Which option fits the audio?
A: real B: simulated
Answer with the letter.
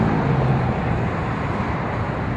B